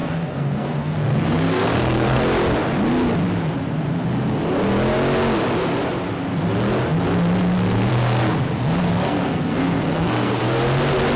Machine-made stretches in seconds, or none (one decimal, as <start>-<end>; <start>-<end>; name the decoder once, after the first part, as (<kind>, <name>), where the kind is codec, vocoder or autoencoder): 0.0-2.2 (codec, SNAC); 8.8-10.4